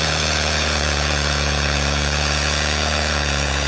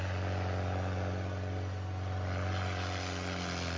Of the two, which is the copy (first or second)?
first